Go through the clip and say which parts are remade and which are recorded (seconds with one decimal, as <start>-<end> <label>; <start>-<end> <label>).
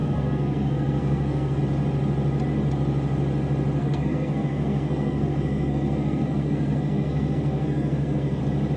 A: 0.0-1.6 remade; 1.6-3.8 recorded; 3.8-8.4 remade; 8.4-8.8 recorded